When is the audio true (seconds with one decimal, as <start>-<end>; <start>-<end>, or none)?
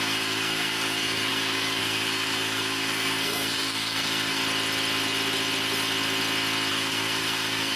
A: 4.4-6.7